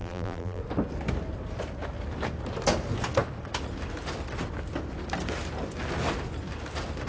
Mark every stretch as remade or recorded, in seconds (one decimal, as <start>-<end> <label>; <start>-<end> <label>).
0.0-0.6 remade; 0.6-7.1 recorded